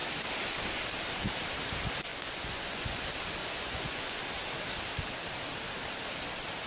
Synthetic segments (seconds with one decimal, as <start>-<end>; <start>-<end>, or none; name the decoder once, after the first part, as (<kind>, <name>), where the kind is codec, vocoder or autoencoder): 2.1-3.0 (vocoder, Vocos); 3.4-4.2